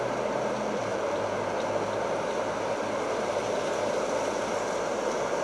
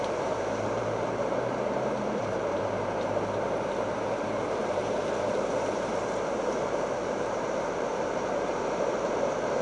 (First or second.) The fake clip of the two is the second